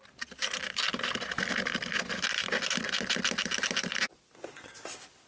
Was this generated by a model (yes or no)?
no